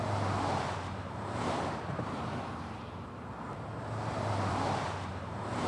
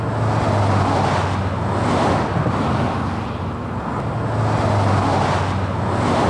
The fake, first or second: first